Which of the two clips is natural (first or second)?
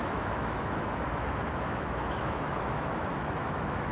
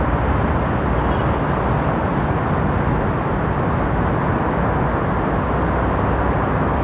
second